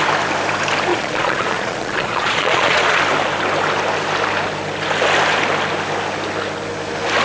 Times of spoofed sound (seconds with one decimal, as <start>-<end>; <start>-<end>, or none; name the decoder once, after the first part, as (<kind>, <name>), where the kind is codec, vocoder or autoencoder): 0.9-3.0 (vocoder, Vocos)